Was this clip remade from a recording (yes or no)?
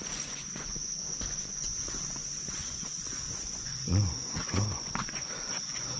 yes